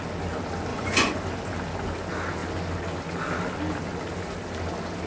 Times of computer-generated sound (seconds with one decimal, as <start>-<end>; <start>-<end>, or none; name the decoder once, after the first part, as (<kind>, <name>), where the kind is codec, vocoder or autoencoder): 0.7-1.2 (vocoder, Vocos)